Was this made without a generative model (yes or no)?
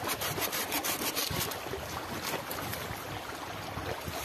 yes